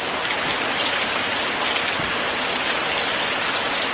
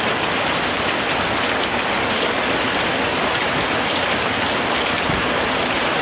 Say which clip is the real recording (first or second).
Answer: first